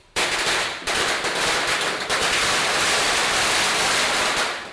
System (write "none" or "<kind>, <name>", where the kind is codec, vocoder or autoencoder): none